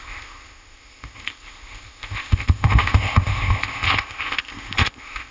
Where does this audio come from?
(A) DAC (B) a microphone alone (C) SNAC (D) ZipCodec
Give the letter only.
D